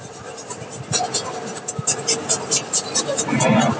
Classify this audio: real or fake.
real